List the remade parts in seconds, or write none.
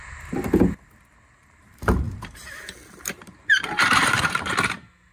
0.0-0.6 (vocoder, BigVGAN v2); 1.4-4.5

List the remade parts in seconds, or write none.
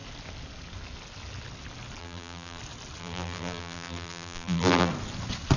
2.0-2.6 (vocoder, BigVGAN v2); 3.0-4.9